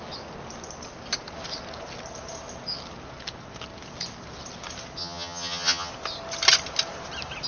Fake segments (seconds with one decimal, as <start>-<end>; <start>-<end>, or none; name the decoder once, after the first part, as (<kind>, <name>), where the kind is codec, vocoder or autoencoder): 5.0-5.9 (vocoder, HiFi-GAN)